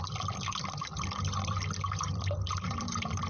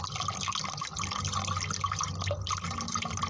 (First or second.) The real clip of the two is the second